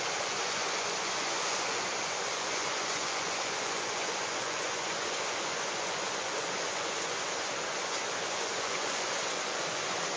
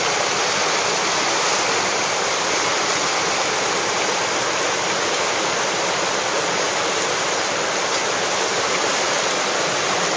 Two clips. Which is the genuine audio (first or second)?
second